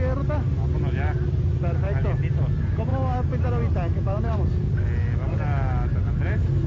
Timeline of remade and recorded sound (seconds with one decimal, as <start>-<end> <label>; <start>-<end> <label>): 0.0-6.7 recorded